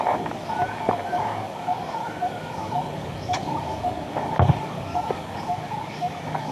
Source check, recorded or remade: remade